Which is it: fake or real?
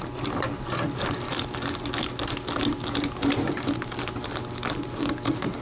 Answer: real